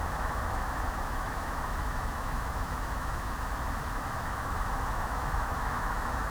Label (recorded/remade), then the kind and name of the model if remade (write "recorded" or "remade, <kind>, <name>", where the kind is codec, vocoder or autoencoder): remade, autoencoder, DAC-VAE